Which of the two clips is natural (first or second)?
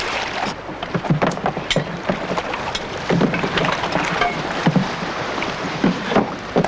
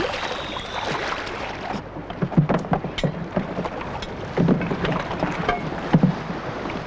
second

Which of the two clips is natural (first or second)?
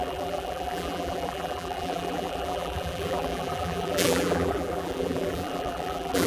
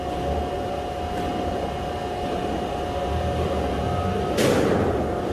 second